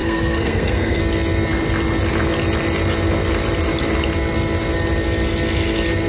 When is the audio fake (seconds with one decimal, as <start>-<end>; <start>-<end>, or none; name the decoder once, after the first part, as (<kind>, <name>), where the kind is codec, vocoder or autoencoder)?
0.0-1.0 (codec, SNAC)

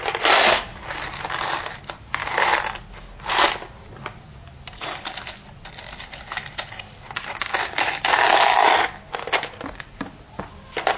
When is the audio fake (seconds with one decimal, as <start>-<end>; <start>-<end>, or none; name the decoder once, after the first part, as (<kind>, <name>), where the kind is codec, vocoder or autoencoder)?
none

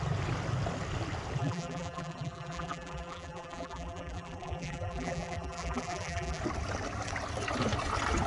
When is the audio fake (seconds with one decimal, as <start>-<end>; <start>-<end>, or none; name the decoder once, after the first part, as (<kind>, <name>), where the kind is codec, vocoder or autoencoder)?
1.4-6.4 (vocoder, BigVGAN v2)

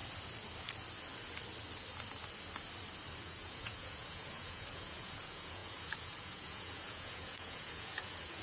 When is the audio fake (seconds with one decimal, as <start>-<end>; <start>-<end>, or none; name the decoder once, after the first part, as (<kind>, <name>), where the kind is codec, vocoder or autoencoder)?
3.2-8.4 (vocoder, Vocos)

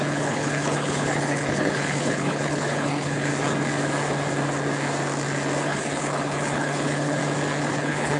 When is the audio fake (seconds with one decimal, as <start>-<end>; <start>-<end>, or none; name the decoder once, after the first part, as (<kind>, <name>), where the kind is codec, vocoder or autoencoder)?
0.0-3.3 (codec, HILCodec); 5.6-7.2; 7.7-8.2

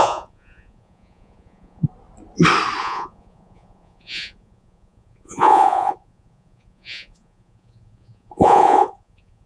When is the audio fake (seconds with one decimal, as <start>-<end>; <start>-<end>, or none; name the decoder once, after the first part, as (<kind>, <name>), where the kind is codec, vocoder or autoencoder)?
0.0-1.9 (vocoder, Vocos); 2.8-9.5

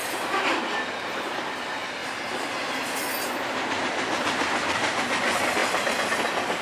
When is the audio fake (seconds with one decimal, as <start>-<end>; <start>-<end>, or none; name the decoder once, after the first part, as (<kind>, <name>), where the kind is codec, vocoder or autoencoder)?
0.0-0.6 (vocoder, BigVGAN v2)